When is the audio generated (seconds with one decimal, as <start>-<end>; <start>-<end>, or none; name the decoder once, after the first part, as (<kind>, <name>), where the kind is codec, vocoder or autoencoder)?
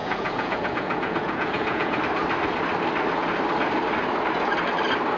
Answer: 0.0-2.0 (vocoder, Vocos)